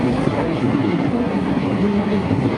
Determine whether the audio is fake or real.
fake